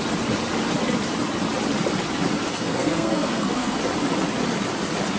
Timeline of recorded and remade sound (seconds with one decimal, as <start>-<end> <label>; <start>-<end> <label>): 0.0-2.5 recorded; 2.5-3.8 remade; 3.8-5.2 recorded